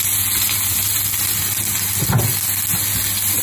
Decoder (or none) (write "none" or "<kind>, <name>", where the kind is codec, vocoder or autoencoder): none